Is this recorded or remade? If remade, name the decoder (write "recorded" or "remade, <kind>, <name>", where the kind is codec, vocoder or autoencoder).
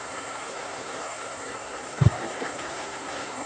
remade, codec, SNAC